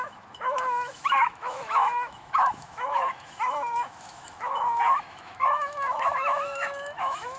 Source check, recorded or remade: remade